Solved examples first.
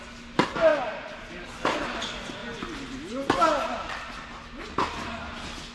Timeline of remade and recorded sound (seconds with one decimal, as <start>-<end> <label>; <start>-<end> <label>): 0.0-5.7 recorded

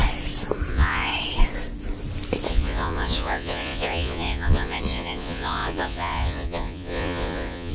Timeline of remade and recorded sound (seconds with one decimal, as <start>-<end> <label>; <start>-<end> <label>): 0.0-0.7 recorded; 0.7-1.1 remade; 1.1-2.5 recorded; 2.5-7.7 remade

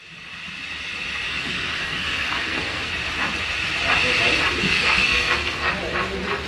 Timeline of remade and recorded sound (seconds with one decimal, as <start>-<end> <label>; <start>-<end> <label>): 0.0-1.3 recorded; 1.3-2.9 remade; 2.9-4.6 recorded; 4.6-5.7 remade; 5.7-6.5 recorded

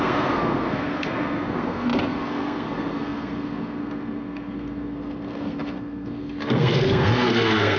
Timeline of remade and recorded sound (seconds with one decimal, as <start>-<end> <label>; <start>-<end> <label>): 0.0-7.8 remade